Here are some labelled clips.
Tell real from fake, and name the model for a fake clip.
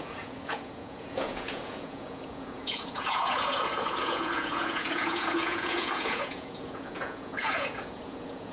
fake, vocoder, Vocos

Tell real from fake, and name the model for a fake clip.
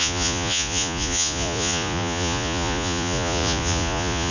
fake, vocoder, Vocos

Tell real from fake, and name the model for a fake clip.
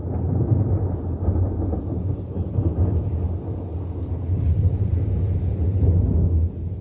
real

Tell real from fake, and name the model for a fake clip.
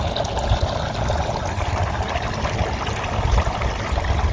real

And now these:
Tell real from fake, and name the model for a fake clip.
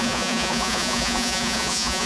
fake, vocoder, Vocos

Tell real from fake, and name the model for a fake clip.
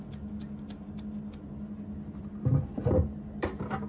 real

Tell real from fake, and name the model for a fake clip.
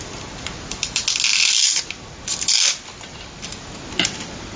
real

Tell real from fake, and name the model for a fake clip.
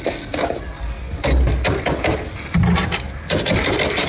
real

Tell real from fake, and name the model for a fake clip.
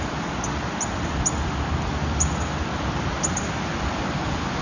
real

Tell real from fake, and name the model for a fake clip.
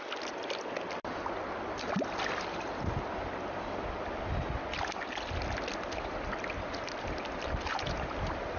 real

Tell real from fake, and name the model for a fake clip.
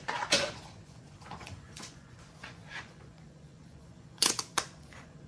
fake, vocoder, Vocos